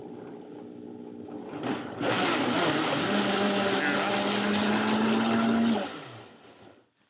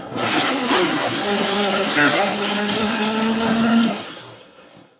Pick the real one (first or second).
first